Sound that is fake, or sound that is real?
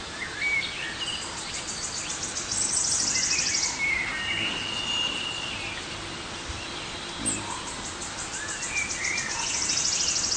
real